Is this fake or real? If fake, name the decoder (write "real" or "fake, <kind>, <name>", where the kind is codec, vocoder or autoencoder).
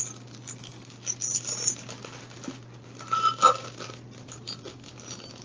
real